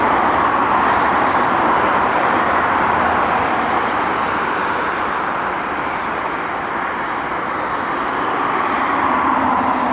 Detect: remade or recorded remade